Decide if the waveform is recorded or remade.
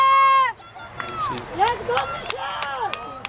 recorded